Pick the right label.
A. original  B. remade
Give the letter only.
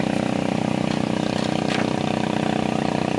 A